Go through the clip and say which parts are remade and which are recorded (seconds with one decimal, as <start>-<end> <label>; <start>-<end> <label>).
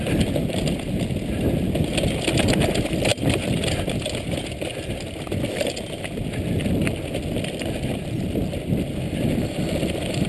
0.0-10.3 recorded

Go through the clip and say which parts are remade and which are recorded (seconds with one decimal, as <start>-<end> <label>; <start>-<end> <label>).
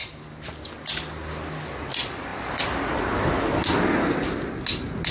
0.0-5.1 recorded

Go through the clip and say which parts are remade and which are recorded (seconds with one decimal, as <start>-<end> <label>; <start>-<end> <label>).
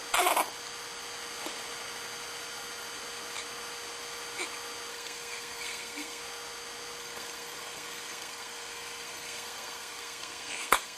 0.0-4.9 recorded; 4.9-6.2 remade; 6.2-7.0 recorded; 7.0-11.0 remade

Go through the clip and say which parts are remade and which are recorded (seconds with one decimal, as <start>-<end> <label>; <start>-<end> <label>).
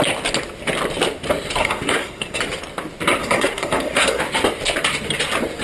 0.0-1.6 recorded; 1.6-2.4 remade; 2.4-3.2 recorded; 3.2-4.2 remade; 4.2-5.6 recorded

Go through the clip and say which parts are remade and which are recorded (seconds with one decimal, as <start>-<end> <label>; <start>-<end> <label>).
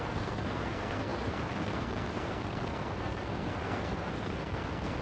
0.0-5.0 remade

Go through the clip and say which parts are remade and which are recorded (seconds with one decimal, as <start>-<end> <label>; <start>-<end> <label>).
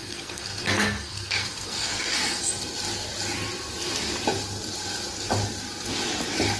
0.0-2.5 remade; 2.5-6.6 recorded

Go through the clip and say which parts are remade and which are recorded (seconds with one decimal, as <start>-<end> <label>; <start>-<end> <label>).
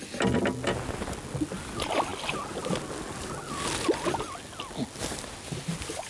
0.0-6.1 recorded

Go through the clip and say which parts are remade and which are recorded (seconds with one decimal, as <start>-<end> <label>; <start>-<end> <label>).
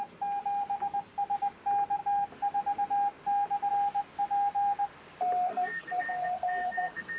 0.0-5.5 recorded; 5.5-7.2 remade